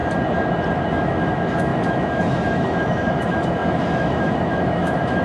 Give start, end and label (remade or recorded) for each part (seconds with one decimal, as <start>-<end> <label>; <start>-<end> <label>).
0.0-0.9 recorded; 0.9-5.2 remade